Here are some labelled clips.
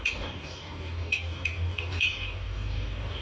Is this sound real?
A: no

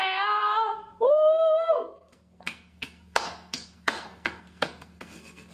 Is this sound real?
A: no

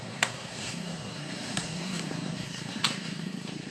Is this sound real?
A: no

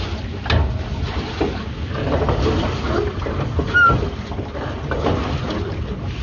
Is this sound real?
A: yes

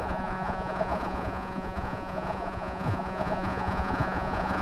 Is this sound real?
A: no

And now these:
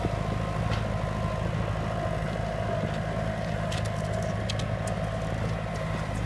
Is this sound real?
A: yes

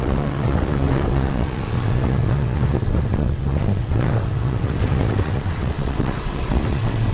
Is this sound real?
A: no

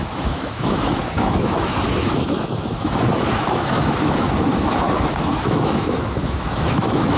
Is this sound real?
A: no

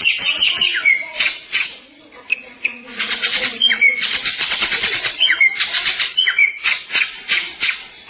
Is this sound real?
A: no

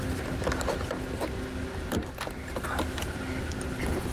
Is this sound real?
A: yes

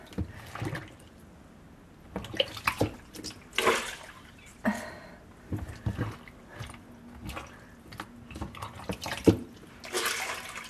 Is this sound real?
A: yes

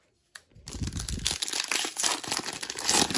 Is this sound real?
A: yes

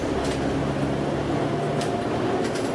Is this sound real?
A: yes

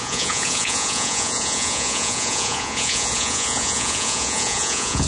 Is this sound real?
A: no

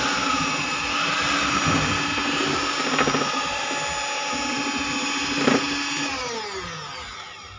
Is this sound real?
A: yes